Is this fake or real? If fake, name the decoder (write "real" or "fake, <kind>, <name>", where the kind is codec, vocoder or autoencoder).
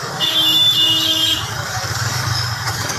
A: fake, codec, DAC